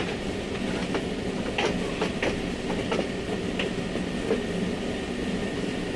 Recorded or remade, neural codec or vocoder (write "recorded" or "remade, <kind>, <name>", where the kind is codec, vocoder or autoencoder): recorded